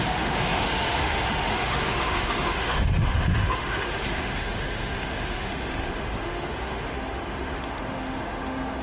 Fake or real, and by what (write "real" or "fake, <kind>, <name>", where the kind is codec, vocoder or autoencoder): fake, autoencoder, DAC-VAE